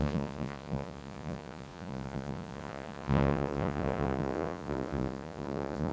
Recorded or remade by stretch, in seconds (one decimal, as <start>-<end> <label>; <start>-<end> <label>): 0.0-5.9 remade